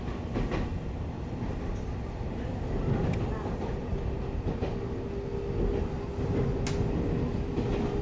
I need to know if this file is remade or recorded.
recorded